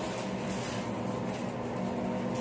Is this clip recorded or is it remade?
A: recorded